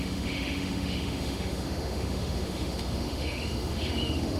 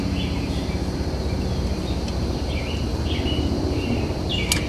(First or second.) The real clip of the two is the second